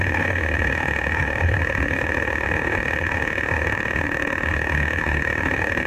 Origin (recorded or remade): remade